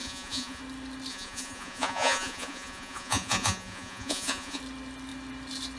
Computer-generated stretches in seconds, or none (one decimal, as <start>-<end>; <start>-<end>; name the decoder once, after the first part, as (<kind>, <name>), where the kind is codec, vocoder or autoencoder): 0.0-0.6 (vocoder, Vocos); 1.1-4.6

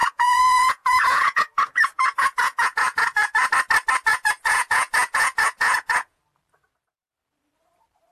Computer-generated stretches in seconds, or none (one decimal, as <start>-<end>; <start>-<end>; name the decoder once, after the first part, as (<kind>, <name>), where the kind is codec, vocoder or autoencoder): 0.0-3.5 (vocoder, Vocos); 4.1-6.2

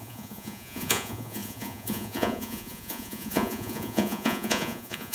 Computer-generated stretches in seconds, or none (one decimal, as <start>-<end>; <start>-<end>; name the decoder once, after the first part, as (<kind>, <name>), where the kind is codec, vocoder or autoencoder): 0.0-5.1 (vocoder, Vocos)

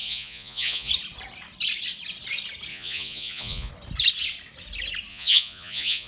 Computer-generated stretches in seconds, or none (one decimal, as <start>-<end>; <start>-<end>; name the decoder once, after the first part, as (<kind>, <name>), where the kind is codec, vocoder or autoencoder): 0.0-0.9 (vocoder, Vocos); 2.7-3.7; 5.1-6.1

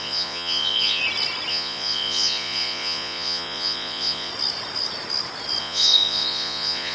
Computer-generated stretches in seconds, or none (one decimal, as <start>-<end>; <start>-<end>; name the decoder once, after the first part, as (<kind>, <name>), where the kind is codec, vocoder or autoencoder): 0.0-1.0 (vocoder, Vocos); 1.5-4.3; 5.6-6.9

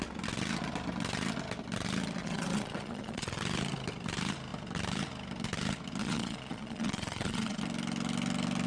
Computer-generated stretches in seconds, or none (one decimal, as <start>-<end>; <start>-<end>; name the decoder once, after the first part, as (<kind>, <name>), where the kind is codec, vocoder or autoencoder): 2.2-3.4 (vocoder, Vocos); 6.0-7.6

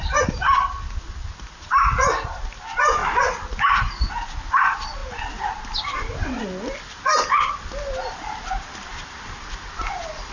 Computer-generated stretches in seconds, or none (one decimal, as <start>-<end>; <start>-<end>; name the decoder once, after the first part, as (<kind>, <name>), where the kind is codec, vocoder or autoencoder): none

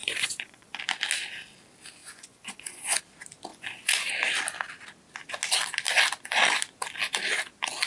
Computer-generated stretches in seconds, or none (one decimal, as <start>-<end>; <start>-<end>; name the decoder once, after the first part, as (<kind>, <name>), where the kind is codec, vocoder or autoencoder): 0.0-0.8 (vocoder, Vocos); 2.0-3.0; 3.5-4.1